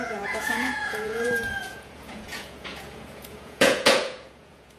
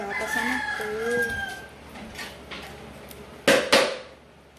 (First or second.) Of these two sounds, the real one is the second